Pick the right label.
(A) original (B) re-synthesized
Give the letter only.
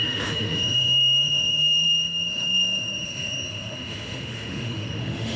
B